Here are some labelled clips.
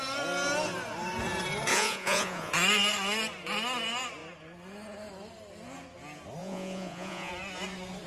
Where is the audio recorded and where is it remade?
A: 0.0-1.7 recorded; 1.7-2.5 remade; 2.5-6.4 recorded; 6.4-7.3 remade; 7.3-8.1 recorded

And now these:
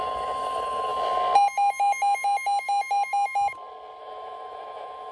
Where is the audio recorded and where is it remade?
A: 0.0-0.9 remade; 0.9-4.0 recorded; 4.0-5.1 remade

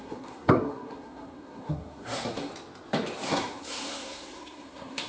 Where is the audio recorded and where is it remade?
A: 0.0-2.5 remade; 2.5-3.3 recorded; 3.3-5.1 remade

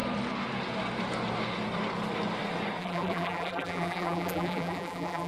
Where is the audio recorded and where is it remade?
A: 0.0-2.8 recorded; 2.8-5.3 remade

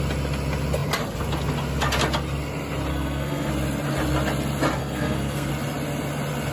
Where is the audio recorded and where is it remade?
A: 0.0-2.9 recorded; 2.9-3.5 remade; 3.5-4.8 recorded; 4.8-5.5 remade; 5.5-6.5 recorded